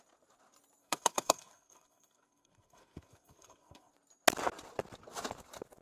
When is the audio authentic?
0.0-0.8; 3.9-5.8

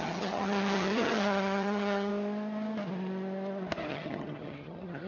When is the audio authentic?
2.1-3.9

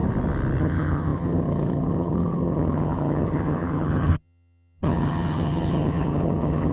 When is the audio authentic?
0.0-0.6

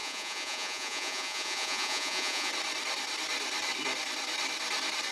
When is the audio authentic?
2.5-5.1

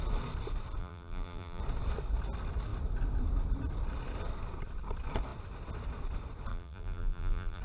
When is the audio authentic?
0.0-0.8; 1.6-6.5

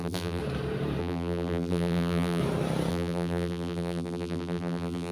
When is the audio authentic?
0.4-1.0; 2.4-2.9

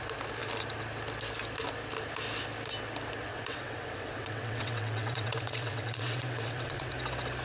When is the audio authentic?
0.0-3.3; 6.9-7.4